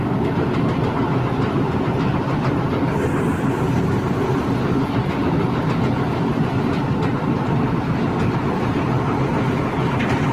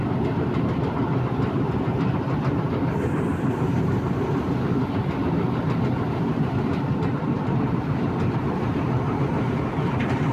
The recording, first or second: first